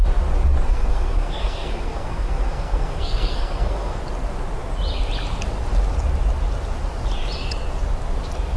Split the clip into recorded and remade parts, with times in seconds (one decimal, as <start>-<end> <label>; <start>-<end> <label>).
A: 0.0-0.7 recorded; 0.7-4.0 remade; 4.0-8.6 recorded